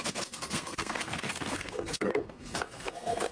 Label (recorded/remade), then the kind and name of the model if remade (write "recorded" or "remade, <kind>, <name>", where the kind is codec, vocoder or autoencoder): remade, codec, SNAC